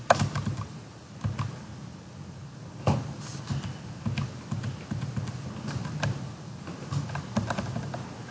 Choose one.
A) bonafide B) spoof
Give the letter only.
A